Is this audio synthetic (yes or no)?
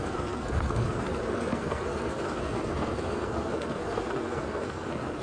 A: yes